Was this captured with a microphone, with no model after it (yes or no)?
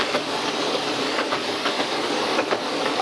no